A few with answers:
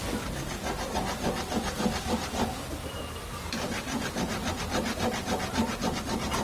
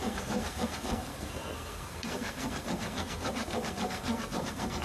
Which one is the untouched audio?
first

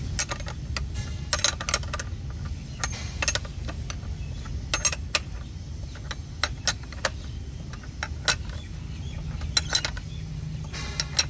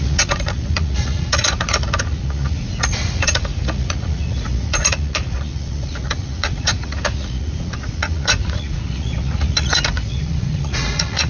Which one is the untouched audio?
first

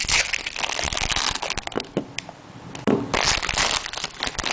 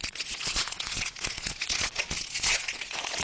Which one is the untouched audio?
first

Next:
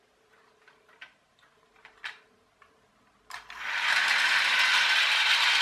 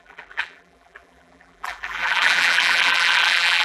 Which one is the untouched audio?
first